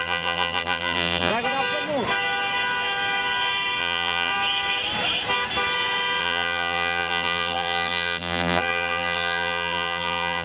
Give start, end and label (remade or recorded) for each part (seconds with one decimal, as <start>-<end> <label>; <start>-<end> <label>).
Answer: 0.0-1.3 remade; 1.3-3.8 recorded; 3.8-4.3 remade; 4.3-6.2 recorded; 6.2-10.4 remade